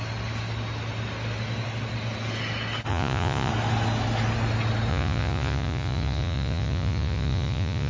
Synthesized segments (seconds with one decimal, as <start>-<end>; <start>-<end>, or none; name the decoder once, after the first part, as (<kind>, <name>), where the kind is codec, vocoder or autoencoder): 2.9-3.5 (vocoder, Vocos); 4.9-7.9